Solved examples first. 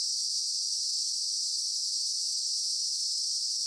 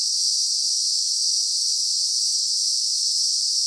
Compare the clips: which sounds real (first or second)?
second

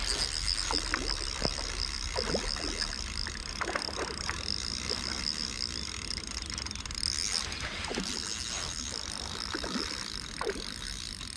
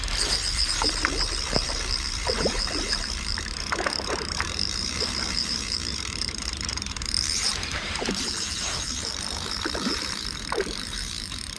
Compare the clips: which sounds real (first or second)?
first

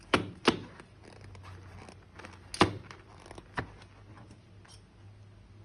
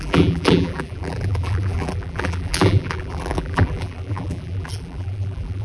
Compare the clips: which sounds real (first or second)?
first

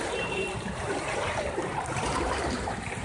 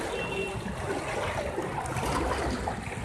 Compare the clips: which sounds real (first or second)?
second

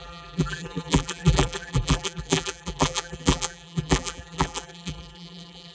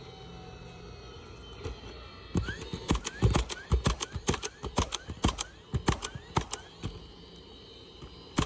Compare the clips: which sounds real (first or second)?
second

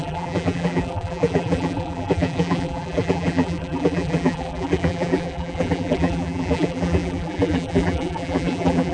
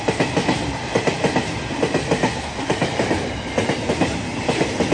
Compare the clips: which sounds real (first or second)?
second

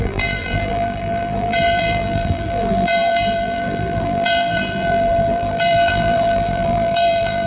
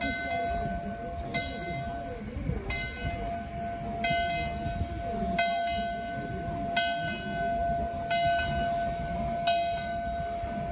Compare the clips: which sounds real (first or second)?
second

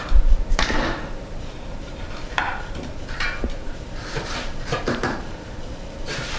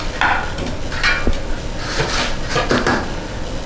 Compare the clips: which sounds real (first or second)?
second